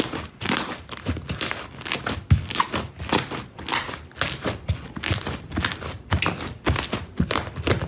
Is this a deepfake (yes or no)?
no